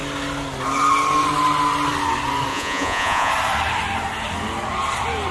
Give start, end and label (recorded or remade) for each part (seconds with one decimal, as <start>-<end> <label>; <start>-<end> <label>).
0.0-2.5 recorded; 2.5-3.3 remade; 3.3-5.3 recorded